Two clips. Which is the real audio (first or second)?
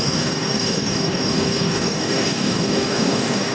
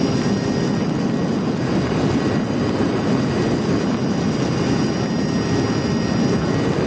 second